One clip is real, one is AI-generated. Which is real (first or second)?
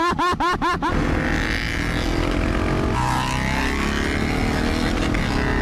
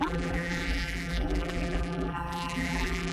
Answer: first